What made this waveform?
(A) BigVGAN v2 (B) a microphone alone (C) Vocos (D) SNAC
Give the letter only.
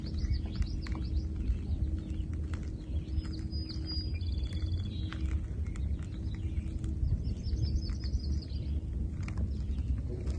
B